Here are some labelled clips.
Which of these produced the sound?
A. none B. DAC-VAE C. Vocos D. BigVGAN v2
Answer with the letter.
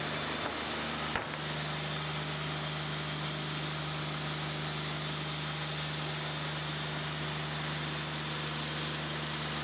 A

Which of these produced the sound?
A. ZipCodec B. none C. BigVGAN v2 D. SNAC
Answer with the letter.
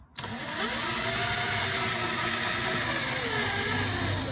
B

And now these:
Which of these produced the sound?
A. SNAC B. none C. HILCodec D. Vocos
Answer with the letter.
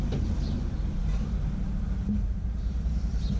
B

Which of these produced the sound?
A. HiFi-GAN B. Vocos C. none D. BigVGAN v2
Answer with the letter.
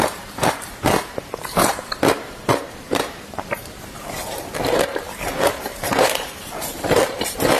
D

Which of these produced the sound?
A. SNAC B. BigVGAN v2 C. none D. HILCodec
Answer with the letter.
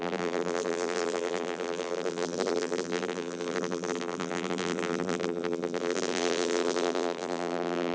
B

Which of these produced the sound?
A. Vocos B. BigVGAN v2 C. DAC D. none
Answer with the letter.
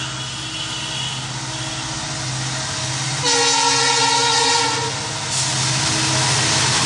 D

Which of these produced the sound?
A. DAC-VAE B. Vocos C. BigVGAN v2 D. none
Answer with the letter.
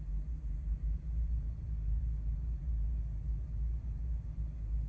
C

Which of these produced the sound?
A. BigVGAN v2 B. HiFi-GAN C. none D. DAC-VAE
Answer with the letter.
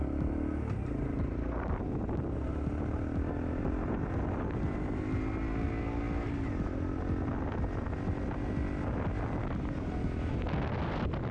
C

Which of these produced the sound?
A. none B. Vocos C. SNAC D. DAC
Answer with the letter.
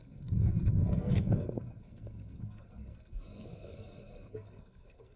C